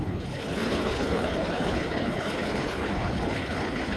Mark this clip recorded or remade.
remade